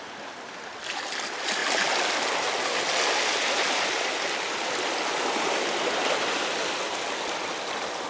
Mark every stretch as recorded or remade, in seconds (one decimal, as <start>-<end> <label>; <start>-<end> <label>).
0.0-8.1 recorded